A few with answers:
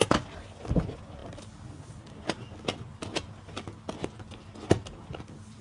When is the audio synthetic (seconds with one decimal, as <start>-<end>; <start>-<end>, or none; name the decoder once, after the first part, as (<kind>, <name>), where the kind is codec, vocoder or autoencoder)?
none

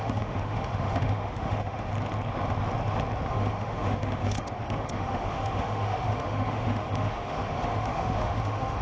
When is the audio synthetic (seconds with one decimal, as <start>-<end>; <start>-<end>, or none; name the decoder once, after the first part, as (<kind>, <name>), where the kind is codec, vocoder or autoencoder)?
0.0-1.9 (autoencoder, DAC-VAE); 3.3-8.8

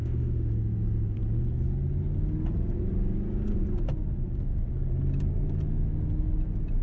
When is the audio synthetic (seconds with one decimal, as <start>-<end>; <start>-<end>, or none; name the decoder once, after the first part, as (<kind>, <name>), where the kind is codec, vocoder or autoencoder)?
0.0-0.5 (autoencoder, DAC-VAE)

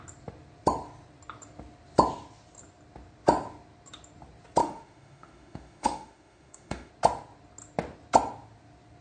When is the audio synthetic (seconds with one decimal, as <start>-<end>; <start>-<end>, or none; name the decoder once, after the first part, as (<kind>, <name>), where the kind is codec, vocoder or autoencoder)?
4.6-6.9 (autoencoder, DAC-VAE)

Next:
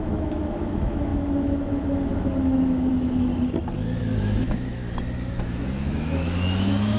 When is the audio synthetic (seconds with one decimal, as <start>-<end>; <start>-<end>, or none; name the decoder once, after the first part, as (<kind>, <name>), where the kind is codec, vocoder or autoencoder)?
0.0-3.3 (autoencoder, DAC-VAE); 4.0-4.8; 5.3-7.0

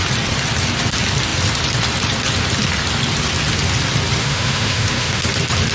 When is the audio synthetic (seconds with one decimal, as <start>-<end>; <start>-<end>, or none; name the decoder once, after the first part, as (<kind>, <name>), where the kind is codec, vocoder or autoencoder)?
4.2-5.2 (autoencoder, DAC-VAE)

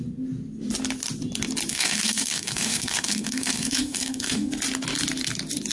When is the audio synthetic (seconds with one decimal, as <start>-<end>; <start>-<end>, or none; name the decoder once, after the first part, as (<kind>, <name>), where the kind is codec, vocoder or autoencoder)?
1.7-4.5 (autoencoder, DAC-VAE)

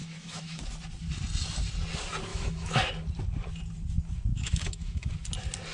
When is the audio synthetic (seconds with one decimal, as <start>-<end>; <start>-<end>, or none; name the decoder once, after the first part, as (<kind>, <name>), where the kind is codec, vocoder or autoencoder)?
0.0-0.6 (autoencoder, DAC-VAE); 2.3-2.9; 4.3-5.1